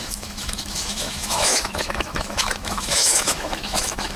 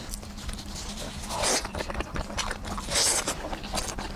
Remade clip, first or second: first